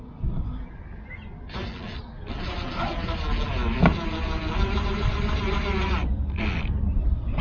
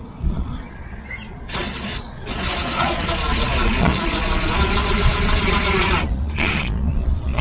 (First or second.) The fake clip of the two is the second